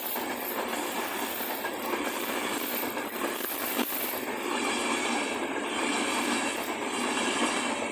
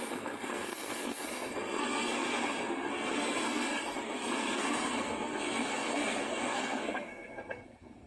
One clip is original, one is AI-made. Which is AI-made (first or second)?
second